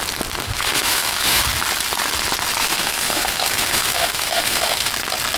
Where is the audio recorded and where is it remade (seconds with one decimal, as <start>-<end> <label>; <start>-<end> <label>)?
0.0-0.4 recorded; 0.4-1.4 remade; 1.4-2.6 recorded; 2.6-4.9 remade; 4.9-5.4 recorded